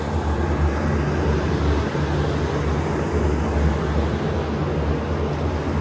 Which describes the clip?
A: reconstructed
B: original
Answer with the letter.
B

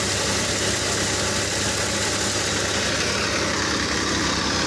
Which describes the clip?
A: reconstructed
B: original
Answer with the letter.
B